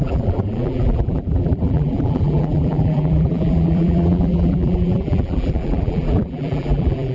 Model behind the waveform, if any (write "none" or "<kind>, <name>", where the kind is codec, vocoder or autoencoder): vocoder, BigVGAN v2